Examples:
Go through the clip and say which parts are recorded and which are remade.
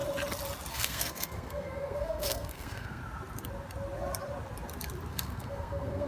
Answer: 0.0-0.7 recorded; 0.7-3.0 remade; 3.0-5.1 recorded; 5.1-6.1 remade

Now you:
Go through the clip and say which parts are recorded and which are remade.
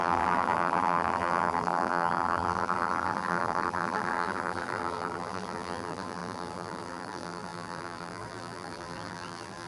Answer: 0.0-9.7 remade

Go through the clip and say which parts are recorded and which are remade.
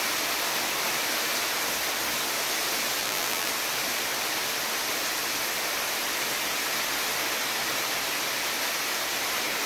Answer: 0.0-3.0 recorded; 3.0-3.5 remade; 3.5-9.7 recorded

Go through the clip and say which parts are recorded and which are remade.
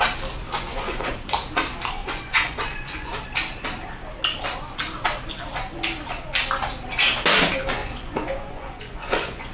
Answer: 0.0-0.6 recorded; 0.6-1.1 remade; 1.1-2.0 recorded; 2.0-3.1 remade; 3.1-7.8 recorded; 7.8-9.5 remade